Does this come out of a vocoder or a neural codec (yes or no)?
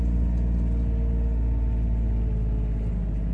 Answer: no